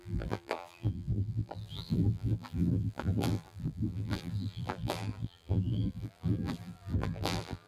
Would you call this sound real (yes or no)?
no